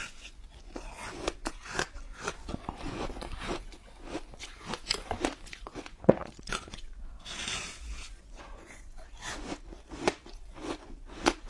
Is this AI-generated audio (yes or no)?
yes